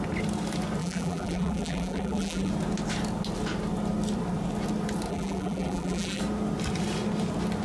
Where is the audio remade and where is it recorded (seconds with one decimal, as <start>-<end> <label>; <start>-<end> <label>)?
0.0-0.8 recorded; 0.8-2.5 remade; 2.5-5.1 recorded; 5.1-6.2 remade; 6.2-7.6 recorded